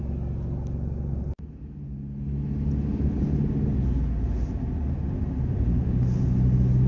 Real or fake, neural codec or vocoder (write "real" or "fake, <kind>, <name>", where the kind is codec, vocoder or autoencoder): real